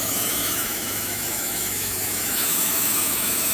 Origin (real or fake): fake